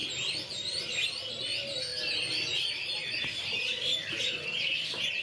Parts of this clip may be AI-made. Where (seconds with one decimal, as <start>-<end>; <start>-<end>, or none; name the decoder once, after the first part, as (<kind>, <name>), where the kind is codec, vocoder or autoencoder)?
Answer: 1.3-1.9 (vocoder, BigVGAN v2); 4.2-5.2